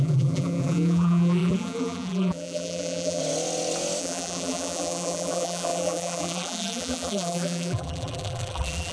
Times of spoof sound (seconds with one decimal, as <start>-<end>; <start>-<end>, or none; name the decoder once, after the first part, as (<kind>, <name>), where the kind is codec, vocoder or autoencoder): 0.0-3.2 (vocoder, BigVGAN v2); 4.0-8.9